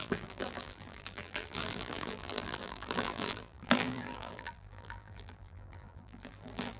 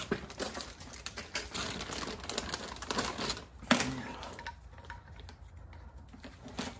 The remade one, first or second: first